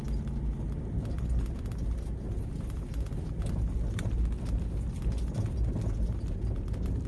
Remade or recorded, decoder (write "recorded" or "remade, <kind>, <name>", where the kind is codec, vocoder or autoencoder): recorded